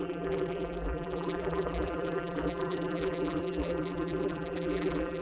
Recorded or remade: remade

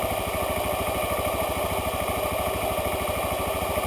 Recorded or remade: recorded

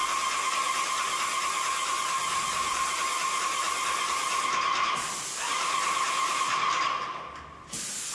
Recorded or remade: recorded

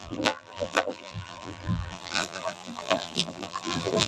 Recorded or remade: remade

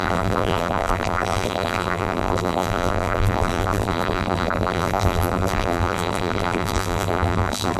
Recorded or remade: remade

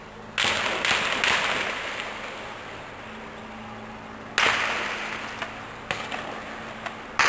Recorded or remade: recorded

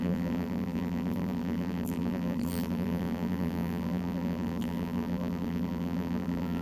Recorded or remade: remade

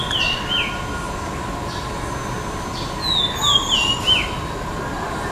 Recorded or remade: recorded